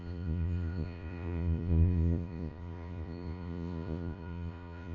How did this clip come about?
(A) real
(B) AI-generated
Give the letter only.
B